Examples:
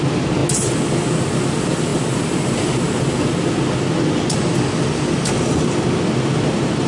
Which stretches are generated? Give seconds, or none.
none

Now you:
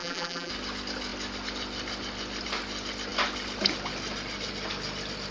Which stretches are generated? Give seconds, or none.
0.0-0.5 (vocoder, BigVGAN v2)

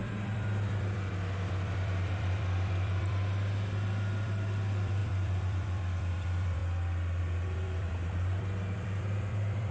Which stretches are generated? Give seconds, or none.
0.0-6.6 (vocoder, BigVGAN v2); 7.2-9.7

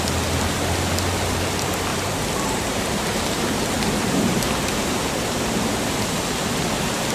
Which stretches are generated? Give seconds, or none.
1.9-6.2 (vocoder, BigVGAN v2)

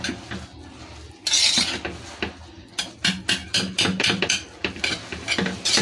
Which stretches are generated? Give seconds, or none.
3.4-4.8 (vocoder, BigVGAN v2)

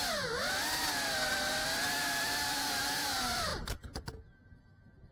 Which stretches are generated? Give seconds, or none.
1.3-3.5 (vocoder, BigVGAN v2); 4.6-5.1

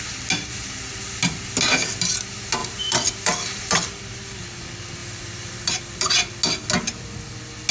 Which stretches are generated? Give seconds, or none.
2.6-4.0 (vocoder, BigVGAN v2); 5.0-5.7

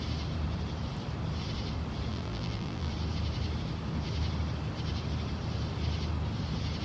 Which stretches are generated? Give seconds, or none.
2.1-2.9 (vocoder, BigVGAN v2)